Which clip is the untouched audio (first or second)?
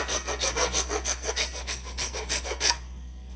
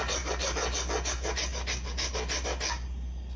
second